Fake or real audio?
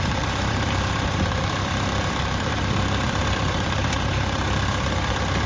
fake